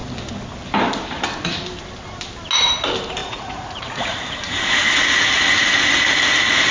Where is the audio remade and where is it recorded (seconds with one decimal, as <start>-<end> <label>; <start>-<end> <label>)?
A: 0.0-3.2 recorded; 3.2-4.3 remade; 4.3-6.7 recorded